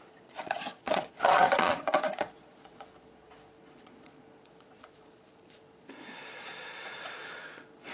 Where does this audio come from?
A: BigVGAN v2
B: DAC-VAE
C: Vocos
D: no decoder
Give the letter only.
C